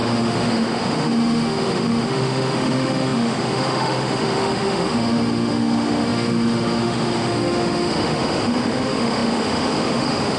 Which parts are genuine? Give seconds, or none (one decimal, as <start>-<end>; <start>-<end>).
none